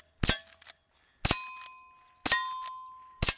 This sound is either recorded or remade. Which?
recorded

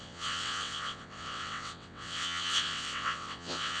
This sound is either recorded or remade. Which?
remade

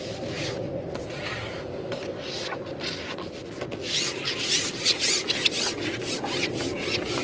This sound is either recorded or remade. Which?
recorded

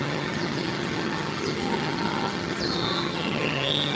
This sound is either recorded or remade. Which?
remade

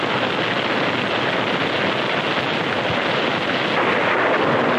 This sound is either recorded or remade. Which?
recorded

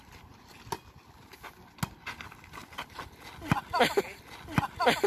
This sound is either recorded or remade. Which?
recorded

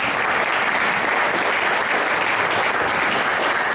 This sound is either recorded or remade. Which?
recorded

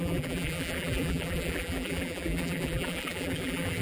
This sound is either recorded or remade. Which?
remade